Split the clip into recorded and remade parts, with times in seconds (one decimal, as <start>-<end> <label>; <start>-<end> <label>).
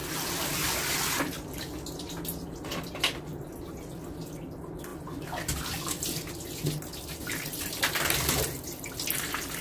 0.0-9.6 recorded